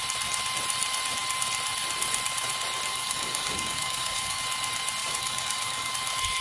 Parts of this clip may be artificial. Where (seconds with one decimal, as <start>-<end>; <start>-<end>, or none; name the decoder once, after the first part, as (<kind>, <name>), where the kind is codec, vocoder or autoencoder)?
2.9-4.4 (codec, DAC); 5.0-5.9